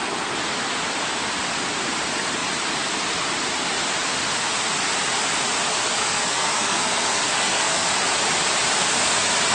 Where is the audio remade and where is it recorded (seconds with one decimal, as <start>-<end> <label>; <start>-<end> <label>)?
0.0-5.7 recorded; 5.7-7.9 remade; 7.9-9.5 recorded